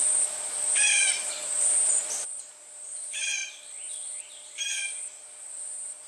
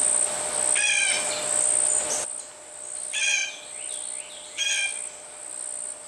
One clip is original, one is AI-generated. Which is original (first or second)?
second